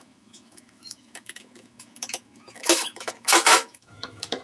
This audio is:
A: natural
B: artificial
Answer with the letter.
B